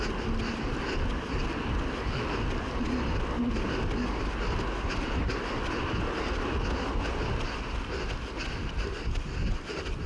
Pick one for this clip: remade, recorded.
recorded